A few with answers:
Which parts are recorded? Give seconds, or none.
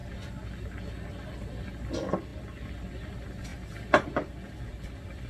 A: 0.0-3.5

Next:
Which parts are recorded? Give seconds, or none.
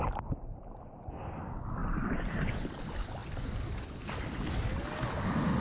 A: 0.0-1.8; 2.8-5.6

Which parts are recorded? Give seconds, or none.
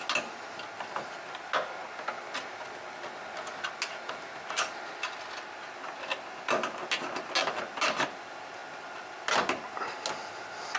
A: 0.0-10.8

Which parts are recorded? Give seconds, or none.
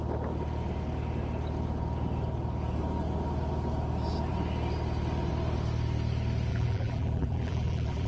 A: 0.0-6.5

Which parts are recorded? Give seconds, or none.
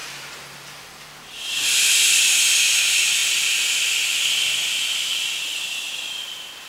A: 2.2-6.7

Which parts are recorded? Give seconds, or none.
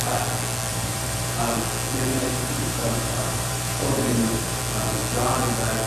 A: 0.0-0.7; 1.4-2.1; 4.6-5.9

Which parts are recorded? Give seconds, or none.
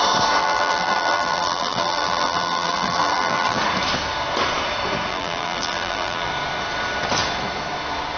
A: 0.0-0.4; 3.6-5.1; 6.3-8.2